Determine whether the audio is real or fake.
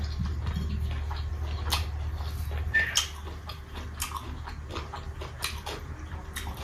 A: real